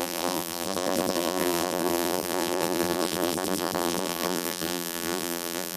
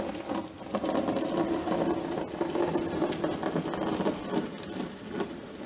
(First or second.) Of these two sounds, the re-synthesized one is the first